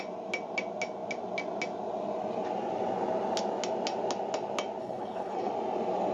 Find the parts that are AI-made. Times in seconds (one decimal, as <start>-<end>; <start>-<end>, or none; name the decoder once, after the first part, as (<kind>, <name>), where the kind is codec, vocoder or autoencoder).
4.8-5.5 (codec, HILCodec)